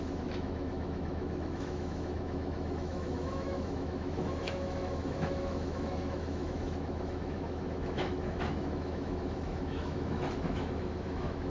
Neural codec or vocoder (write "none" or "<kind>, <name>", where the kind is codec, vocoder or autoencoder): autoencoder, DAC-VAE